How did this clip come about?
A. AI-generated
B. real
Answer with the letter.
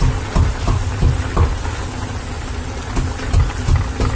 B